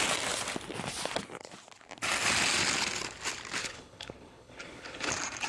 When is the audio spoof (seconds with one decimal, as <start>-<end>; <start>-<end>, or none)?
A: 3.6-5.1